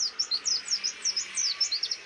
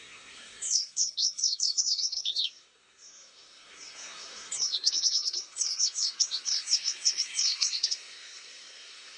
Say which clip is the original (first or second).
first